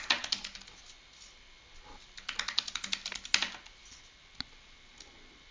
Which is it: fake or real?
real